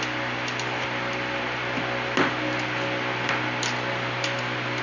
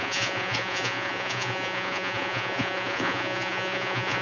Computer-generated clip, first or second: second